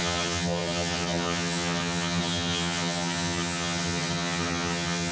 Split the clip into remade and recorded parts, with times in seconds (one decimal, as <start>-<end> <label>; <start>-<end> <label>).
0.0-5.1 remade